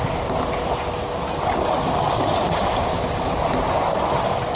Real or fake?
real